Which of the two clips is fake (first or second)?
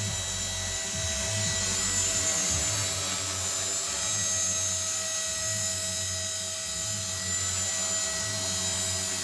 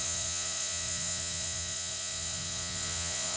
second